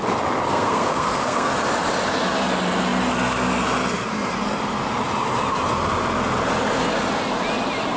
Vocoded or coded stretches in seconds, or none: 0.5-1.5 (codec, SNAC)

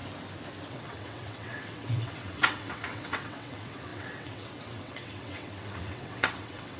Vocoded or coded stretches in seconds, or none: 0.7-6.8 (vocoder, WaveNeXt)

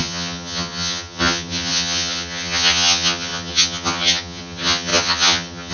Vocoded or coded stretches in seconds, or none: 0.0-5.7 (vocoder, HiFi-GAN)

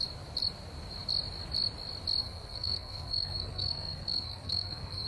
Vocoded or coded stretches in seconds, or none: 2.2-5.1 (codec, SNAC)

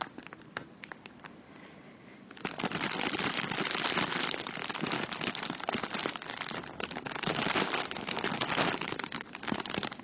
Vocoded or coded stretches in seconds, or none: 0.0-4.6 (vocoder, BigVGAN v2); 5.3-6.0; 9.4-10.0

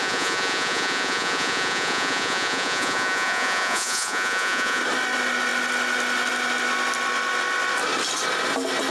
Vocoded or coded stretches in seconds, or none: 0.0-4.8 (vocoder, Vocos)

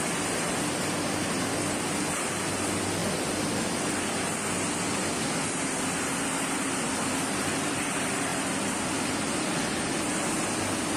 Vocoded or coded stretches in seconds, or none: 3.0-4.1 (vocoder, BigVGAN v2)

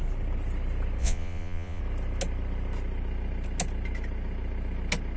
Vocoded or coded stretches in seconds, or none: 1.0-1.8 (vocoder, Vocos)